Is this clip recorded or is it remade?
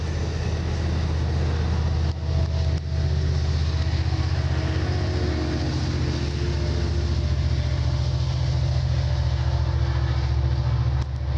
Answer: recorded